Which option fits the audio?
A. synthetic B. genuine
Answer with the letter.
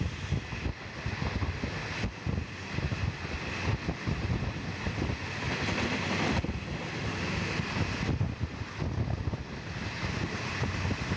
B